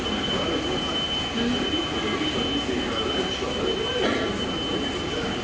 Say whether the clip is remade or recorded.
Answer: recorded